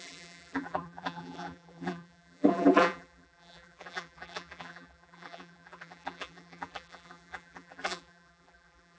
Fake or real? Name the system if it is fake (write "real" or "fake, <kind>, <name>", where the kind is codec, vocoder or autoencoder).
fake, vocoder, BigVGAN v2